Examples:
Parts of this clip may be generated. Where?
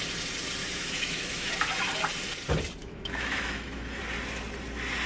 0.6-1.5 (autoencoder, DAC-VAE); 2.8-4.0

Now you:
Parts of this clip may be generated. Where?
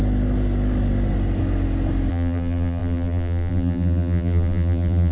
2.1-5.1 (vocoder, BigVGAN v2)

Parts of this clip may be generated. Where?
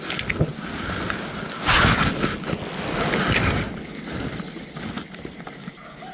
none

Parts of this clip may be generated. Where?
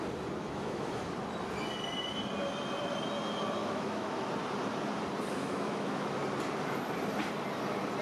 0.4-1.1 (autoencoder, DAC-VAE); 3.6-4.3; 5.4-6.1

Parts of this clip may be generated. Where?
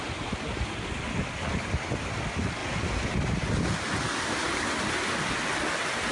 none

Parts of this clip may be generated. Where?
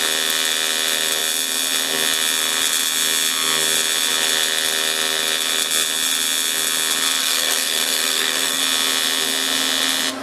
7.2-8.6 (codec, SNAC)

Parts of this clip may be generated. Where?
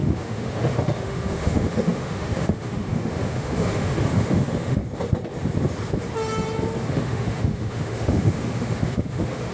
0.0-4.8 (autoencoder, DAC-VAE); 6.9-9.5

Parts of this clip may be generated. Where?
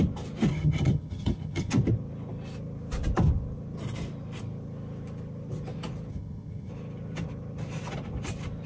0.5-1.7 (vocoder, HiFi-GAN); 6.1-6.7